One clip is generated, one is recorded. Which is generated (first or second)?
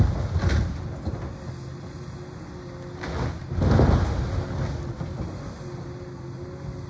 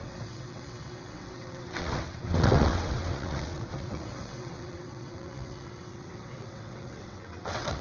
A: second